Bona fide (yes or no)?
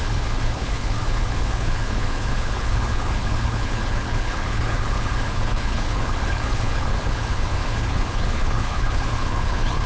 no